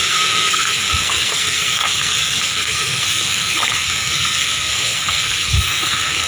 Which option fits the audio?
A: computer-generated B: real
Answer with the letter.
A